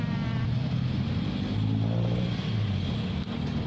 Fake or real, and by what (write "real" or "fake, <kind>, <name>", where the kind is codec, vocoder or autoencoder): real